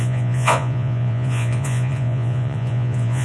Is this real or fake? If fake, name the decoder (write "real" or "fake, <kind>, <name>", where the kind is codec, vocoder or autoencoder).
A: fake, vocoder, Vocos